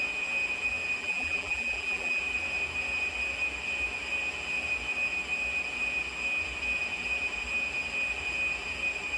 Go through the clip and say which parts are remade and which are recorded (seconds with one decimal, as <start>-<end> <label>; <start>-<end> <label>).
0.0-1.0 recorded; 1.0-2.2 remade; 2.2-9.2 recorded